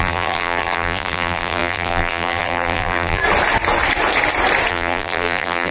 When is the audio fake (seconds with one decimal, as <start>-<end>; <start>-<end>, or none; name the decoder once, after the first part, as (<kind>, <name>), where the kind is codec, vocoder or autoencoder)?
0.0-3.2 (vocoder, BigVGAN v2); 4.7-5.7